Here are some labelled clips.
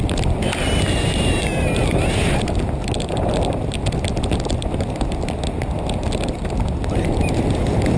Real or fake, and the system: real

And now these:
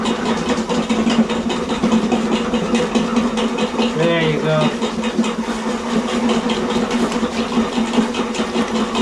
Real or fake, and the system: real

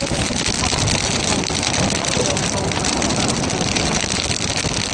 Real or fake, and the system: real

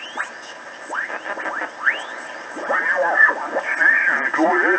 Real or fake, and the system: fake, vocoder, BigVGAN v2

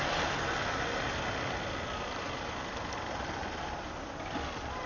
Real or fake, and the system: real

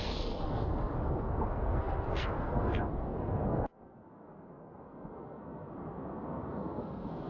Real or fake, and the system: fake, codec, SNAC